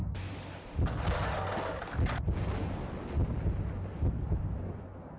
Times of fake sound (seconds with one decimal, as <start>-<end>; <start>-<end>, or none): none